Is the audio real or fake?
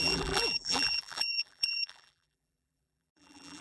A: fake